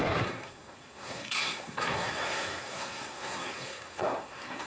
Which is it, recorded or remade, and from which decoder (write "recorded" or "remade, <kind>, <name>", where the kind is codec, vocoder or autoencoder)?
remade, codec, SNAC